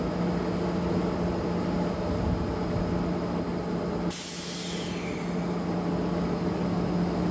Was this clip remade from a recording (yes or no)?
no